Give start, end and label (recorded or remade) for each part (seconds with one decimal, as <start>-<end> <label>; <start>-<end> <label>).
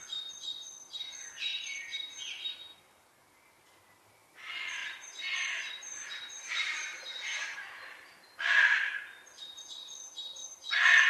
0.0-1.5 recorded; 1.5-2.2 remade; 2.2-4.8 recorded; 4.8-6.5 remade; 6.5-11.1 recorded